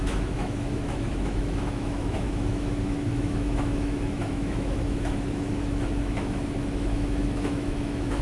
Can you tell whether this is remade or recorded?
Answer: remade